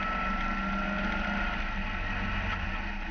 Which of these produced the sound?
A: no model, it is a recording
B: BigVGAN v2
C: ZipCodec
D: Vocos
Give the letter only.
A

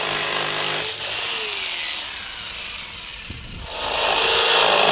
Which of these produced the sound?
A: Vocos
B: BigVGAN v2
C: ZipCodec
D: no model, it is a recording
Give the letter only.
D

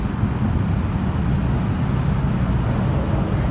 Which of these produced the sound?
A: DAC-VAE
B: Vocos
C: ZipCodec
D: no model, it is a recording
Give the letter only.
D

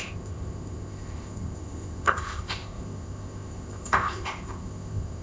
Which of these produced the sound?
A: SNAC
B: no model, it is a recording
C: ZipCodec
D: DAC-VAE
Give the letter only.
C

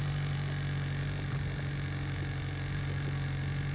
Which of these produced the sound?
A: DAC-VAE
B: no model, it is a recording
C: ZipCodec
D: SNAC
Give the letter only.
B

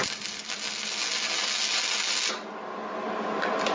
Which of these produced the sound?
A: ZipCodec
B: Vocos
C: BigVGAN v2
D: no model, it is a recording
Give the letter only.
D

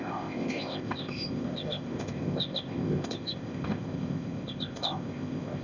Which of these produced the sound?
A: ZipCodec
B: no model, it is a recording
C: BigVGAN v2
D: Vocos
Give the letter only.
A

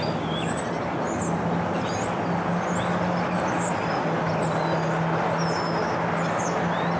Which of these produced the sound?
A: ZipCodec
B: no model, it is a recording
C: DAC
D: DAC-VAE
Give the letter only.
B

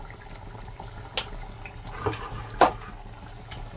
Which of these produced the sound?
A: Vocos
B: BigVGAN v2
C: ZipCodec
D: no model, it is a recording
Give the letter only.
D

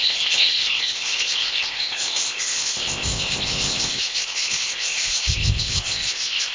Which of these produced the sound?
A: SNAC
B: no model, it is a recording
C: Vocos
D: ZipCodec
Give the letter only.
D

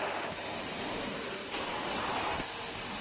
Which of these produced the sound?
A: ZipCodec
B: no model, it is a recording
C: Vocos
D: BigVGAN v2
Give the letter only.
B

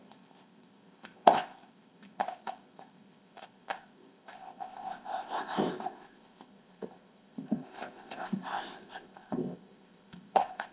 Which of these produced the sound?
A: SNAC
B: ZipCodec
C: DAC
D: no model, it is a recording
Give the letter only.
B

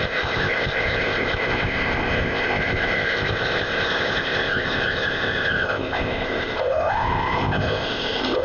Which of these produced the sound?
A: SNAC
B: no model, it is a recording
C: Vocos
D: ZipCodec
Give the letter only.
D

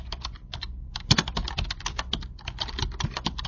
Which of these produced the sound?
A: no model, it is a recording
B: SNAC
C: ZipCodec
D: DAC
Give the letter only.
A